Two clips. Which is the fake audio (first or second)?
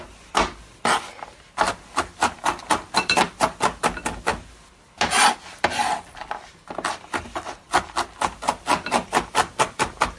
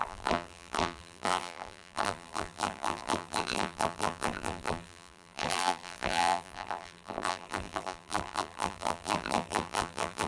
second